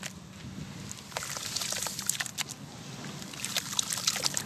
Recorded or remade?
recorded